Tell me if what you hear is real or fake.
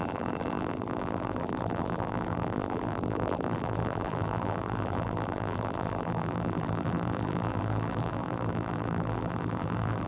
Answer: fake